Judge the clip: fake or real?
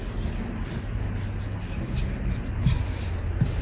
real